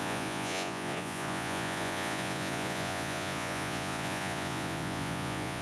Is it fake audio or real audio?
fake